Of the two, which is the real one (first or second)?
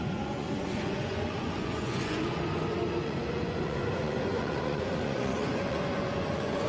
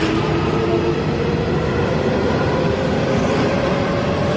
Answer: second